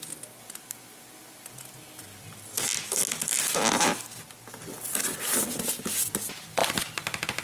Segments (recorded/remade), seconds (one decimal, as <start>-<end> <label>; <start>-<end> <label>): 0.0-7.4 recorded